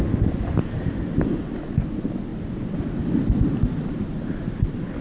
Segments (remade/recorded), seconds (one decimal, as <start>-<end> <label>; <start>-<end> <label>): 0.0-5.0 recorded